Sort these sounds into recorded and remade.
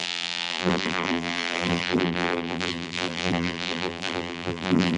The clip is remade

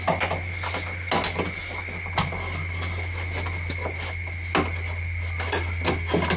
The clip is recorded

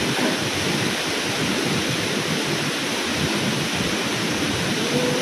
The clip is remade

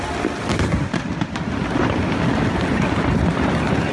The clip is remade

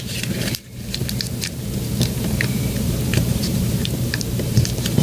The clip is remade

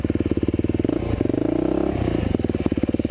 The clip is recorded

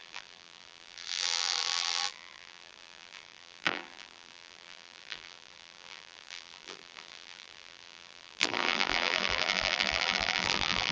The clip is remade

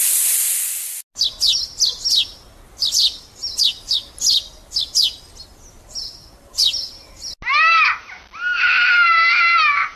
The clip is recorded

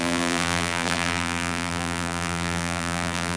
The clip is remade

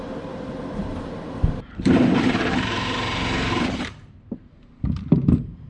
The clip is remade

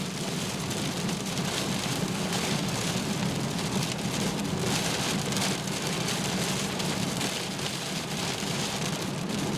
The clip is remade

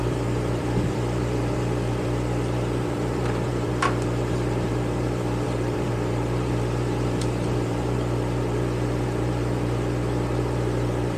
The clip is remade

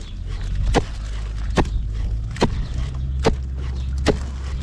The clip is recorded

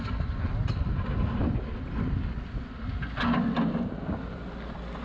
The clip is recorded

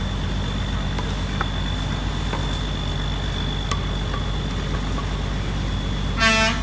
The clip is recorded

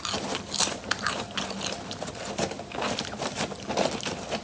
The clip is recorded